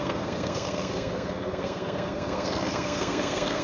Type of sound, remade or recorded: remade